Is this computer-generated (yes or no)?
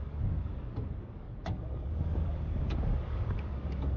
yes